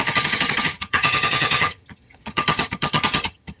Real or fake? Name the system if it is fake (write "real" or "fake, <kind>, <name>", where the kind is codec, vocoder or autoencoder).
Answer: fake, vocoder, HiFi-GAN